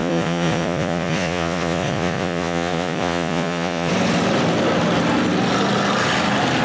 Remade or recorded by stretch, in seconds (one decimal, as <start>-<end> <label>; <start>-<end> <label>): 0.0-3.9 remade; 3.9-6.6 recorded